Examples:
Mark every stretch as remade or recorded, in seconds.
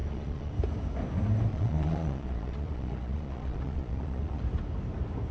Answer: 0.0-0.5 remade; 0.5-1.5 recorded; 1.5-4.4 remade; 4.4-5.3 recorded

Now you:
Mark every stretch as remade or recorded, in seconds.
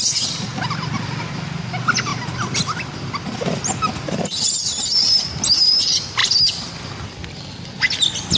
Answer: 0.0-8.4 recorded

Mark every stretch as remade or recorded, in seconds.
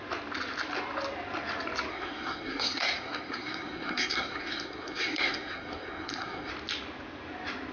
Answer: 0.0-1.9 recorded; 1.9-6.5 remade; 6.5-7.7 recorded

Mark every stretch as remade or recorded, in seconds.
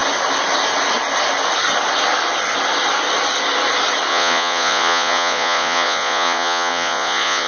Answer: 0.0-4.1 recorded; 4.1-7.5 remade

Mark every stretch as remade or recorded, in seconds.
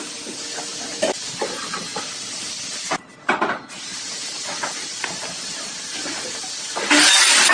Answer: 0.0-7.5 recorded